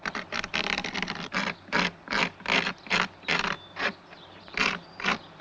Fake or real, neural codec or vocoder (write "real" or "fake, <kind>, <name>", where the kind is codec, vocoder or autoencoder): real